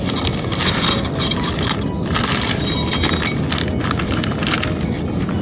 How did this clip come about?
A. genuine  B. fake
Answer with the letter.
A